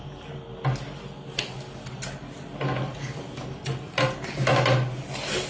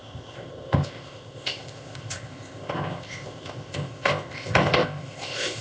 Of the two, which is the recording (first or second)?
first